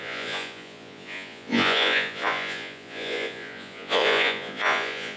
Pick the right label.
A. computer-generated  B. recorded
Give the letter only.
A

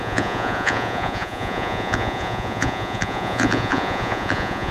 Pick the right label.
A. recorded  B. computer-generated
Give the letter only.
B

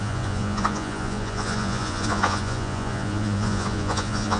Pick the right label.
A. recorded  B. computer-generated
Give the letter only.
B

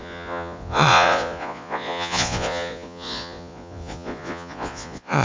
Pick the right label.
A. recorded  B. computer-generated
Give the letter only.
B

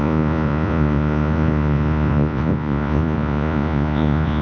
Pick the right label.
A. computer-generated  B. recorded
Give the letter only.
A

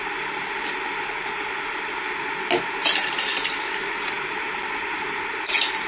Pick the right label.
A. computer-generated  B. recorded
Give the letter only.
B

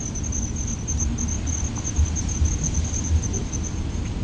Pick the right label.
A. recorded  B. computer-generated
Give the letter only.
A